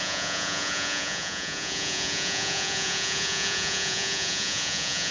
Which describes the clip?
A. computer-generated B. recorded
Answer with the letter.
A